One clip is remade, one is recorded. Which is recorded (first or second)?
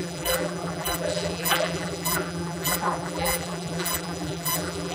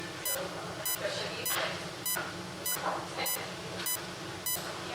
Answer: second